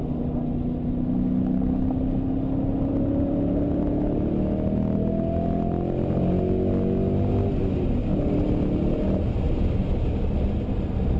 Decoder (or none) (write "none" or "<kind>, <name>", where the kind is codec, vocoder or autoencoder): none